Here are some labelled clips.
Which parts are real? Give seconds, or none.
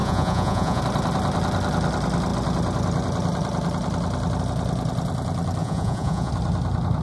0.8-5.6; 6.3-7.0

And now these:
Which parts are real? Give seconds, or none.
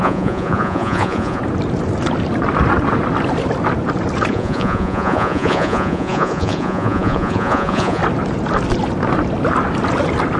1.4-4.3; 8.0-10.4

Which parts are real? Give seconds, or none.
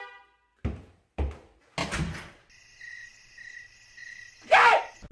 0.0-5.1